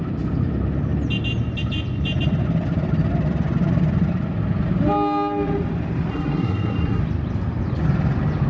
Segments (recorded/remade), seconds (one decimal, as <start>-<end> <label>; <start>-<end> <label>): 0.0-6.1 recorded; 6.1-7.0 remade; 7.0-8.5 recorded